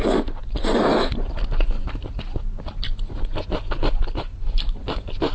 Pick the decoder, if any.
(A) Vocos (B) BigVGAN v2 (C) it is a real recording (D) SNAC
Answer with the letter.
B